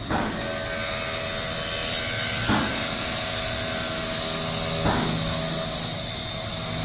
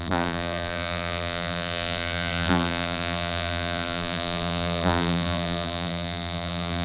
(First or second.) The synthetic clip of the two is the second